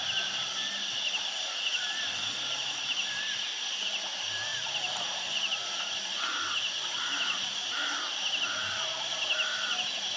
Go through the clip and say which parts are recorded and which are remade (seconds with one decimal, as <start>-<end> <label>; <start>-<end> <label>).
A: 0.0-4.5 recorded; 4.5-7.8 remade; 7.8-8.6 recorded; 8.6-9.6 remade; 9.6-10.2 recorded